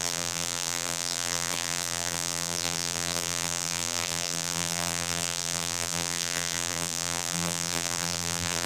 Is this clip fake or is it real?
fake